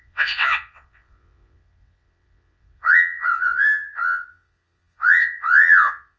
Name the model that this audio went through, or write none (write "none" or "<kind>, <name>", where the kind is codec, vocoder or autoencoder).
vocoder, WaveNeXt